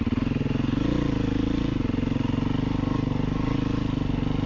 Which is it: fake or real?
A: real